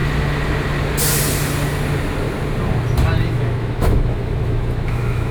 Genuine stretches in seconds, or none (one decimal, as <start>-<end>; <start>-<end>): 0.0-3.2